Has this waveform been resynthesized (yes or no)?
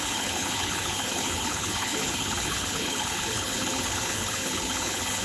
yes